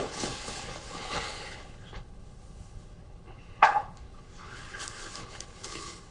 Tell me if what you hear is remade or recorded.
remade